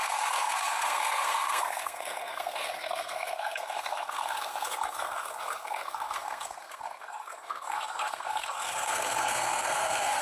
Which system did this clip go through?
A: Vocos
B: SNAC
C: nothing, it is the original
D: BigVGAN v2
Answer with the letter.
B